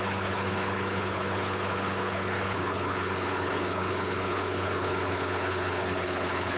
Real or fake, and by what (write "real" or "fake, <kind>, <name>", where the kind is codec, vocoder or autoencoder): fake, codec, HILCodec